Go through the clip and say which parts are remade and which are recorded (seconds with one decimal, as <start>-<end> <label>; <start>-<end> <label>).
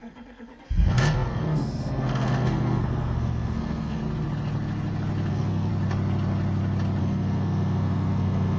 0.0-4.0 remade; 4.0-5.3 recorded; 5.3-5.7 remade; 5.7-7.0 recorded; 7.0-8.6 remade